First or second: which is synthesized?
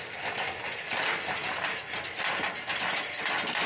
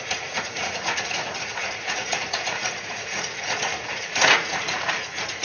second